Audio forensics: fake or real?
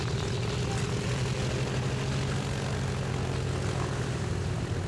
real